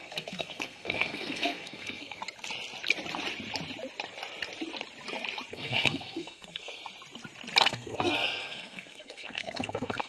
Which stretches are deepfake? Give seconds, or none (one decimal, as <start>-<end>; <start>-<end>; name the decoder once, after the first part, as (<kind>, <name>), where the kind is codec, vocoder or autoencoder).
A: 0.0-2.2 (codec, SNAC); 5.5-6.8; 7.6-10.1